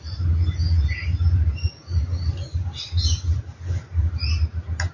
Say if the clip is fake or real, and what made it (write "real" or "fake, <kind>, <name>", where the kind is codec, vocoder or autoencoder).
real